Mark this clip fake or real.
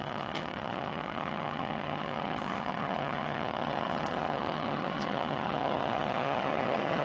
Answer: fake